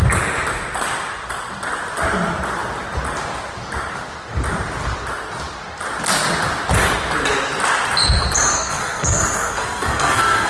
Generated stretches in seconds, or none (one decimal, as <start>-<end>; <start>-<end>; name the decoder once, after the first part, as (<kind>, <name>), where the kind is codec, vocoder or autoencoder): 8.5-10.5 (codec, SNAC)